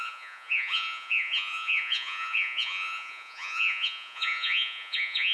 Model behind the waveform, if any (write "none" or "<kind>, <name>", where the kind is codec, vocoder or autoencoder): vocoder, Vocos